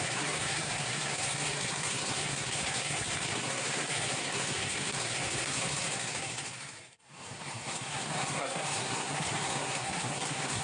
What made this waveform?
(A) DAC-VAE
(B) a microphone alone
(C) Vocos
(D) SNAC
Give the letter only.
D